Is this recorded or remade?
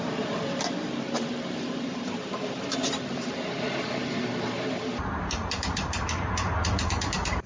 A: remade